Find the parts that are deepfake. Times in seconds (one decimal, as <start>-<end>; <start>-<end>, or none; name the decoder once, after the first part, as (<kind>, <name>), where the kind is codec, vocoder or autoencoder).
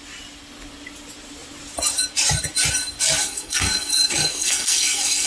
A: 3.2-5.3 (codec, SNAC)